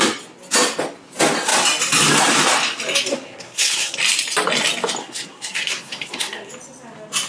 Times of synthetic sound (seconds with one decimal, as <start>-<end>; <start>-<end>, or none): 3.1-4.0; 5.0-6.5